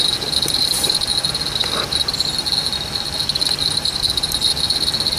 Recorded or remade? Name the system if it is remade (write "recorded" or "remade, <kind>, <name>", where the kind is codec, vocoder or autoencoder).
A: recorded